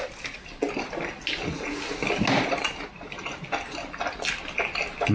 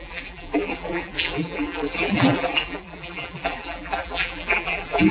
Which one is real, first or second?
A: first